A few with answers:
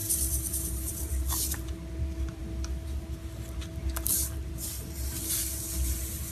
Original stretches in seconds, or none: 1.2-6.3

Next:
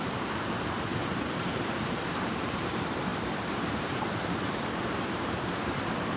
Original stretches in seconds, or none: 3.1-3.7

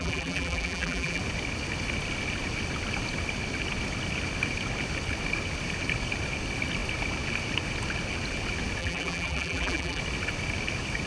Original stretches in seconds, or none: 1.2-8.8; 10.0-11.1